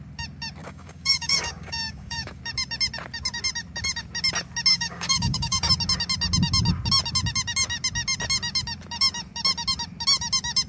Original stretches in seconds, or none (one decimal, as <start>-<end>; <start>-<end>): 0.0-0.6; 2.4-4.7; 5.7-10.7